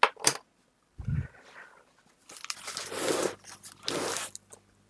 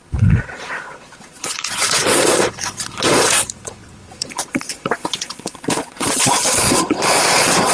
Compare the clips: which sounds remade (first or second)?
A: second